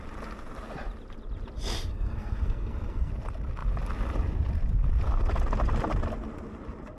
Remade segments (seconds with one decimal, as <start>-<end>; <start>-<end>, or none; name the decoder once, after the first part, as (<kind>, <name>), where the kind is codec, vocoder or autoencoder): 1.9-3.1 (codec, SNAC)